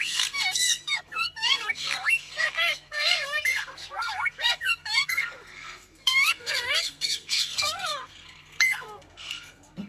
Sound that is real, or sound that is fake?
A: fake